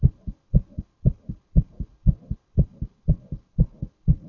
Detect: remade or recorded recorded